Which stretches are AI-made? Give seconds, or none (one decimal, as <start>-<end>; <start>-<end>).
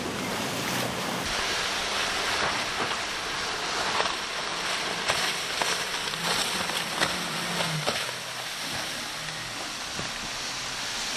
none